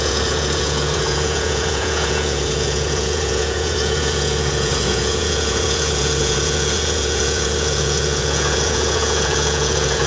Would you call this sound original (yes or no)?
no